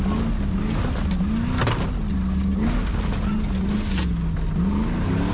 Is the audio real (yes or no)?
yes